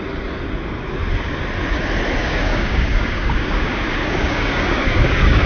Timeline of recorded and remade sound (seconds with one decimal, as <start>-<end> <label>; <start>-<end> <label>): 0.0-2.2 recorded; 2.2-5.5 remade